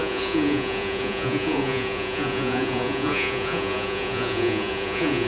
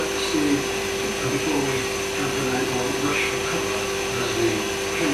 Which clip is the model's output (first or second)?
first